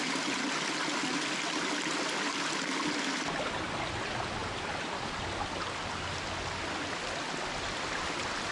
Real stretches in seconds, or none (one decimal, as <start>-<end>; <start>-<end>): 0.0-8.5

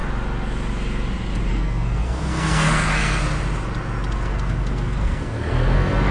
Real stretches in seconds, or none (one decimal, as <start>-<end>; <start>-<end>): 0.0-1.5; 3.2-4.1

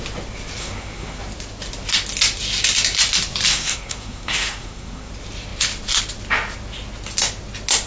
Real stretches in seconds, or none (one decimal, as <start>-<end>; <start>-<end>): 0.0-0.6; 1.2-3.5; 5.1-7.9

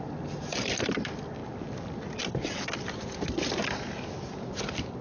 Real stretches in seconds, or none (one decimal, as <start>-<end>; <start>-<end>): 0.0-5.0

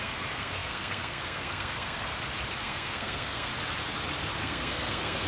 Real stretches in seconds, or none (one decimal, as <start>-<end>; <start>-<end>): 2.1-2.6; 3.5-4.4